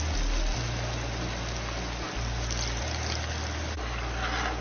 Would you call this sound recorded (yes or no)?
yes